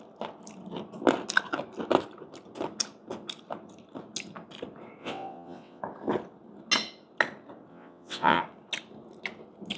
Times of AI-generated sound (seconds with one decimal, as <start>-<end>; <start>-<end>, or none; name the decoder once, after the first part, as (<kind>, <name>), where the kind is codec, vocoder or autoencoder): 5.0-5.8 (vocoder, WaveNeXt); 7.7-8.4

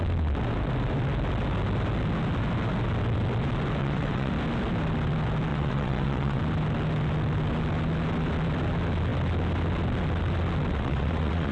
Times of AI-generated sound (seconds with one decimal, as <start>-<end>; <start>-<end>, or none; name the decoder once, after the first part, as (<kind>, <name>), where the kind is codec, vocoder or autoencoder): 3.8-4.3 (vocoder, WaveNeXt); 5.5-6.4; 10.7-11.5

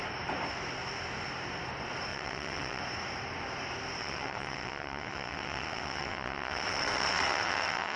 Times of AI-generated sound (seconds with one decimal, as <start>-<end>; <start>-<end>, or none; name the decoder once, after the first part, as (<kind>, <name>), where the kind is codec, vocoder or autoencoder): 2.1-2.8 (vocoder, WaveNeXt); 4.0-8.0

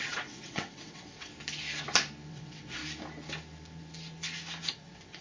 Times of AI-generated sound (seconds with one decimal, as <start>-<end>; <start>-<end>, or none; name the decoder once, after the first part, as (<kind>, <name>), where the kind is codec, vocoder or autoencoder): 0.0-1.3 (vocoder, WaveNeXt); 2.3-2.8; 4.7-5.2

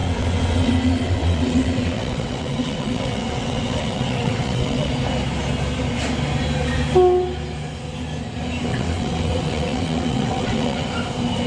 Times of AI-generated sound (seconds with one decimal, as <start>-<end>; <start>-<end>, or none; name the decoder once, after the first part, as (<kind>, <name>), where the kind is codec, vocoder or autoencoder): 0.0-4.9 (vocoder, WaveNeXt); 8.7-10.9

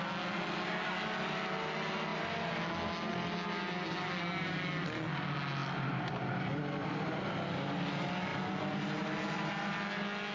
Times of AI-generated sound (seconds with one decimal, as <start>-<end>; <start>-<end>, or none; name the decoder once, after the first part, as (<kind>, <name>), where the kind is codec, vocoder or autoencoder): none

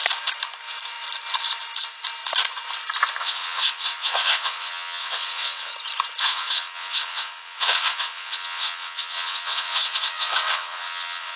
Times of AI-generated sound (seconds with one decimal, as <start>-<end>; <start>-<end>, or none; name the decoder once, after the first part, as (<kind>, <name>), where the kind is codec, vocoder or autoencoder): 3.2-5.7 (vocoder, WaveNeXt); 6.2-11.4

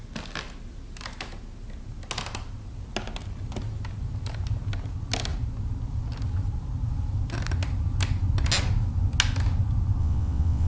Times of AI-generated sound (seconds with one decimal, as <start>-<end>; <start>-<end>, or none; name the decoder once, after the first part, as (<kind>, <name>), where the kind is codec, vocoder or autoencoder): 10.0-10.7 (vocoder, WaveNeXt)